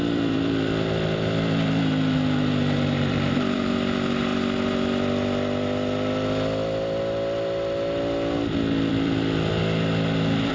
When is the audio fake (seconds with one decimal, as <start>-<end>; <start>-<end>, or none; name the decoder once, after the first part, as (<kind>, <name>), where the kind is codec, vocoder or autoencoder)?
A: 0.0-4.3 (vocoder, BigVGAN v2); 8.9-9.6